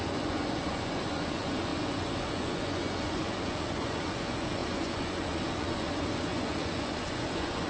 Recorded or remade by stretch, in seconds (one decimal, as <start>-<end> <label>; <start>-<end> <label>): 0.0-7.7 remade